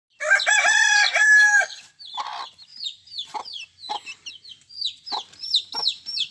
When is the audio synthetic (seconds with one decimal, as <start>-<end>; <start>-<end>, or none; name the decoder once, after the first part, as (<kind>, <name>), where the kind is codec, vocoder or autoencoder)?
1.2-1.8 (codec, SNAC)